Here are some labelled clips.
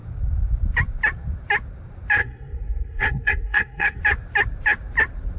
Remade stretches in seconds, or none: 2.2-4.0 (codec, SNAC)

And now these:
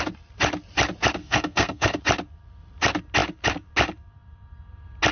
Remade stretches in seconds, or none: 1.2-2.0 (codec, SNAC)

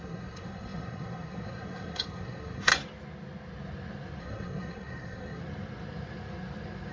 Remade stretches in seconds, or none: 0.0-2.7 (codec, SNAC); 4.2-5.4

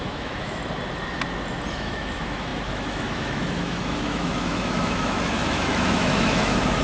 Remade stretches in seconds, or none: 0.0-0.6 (autoencoder, DAC-VAE); 1.7-6.8

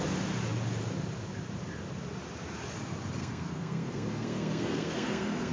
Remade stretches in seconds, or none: 3.2-5.5 (codec, SNAC)

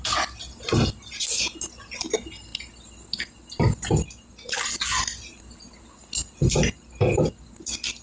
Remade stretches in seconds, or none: none

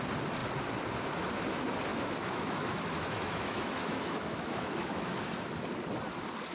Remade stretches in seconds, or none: 1.9-5.3 (autoencoder, DAC-VAE)

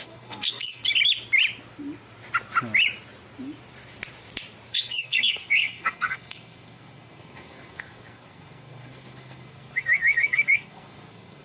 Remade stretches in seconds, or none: 0.0-0.8 (codec, SNAC); 4.7-11.4